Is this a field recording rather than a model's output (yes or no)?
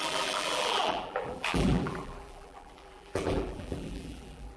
no